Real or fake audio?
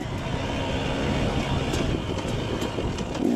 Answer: real